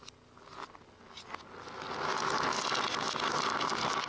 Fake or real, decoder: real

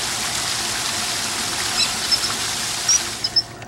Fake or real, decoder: real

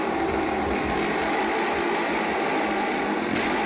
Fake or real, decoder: real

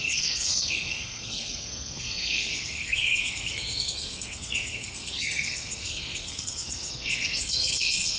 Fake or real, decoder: fake, codec, SNAC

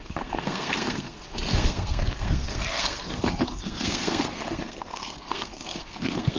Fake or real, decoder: fake, codec, SNAC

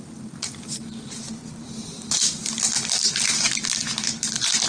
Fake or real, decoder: real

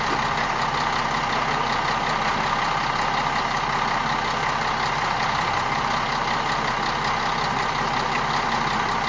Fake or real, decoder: real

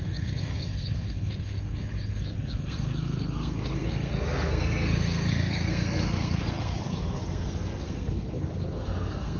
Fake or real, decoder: fake, codec, SNAC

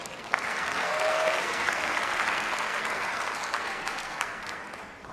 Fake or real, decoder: fake, codec, SNAC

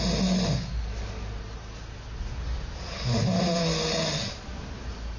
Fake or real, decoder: real